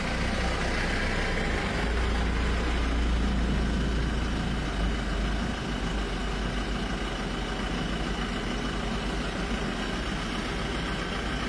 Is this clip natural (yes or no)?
yes